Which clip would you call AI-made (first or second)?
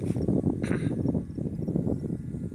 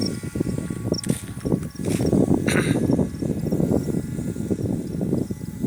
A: first